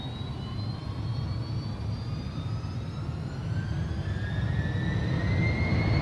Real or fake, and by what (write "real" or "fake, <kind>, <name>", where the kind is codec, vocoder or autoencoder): real